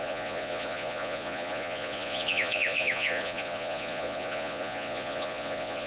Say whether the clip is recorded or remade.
remade